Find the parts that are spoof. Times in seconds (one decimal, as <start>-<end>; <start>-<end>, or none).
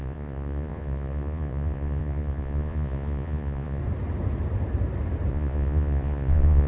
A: 0.0-3.8; 5.3-6.7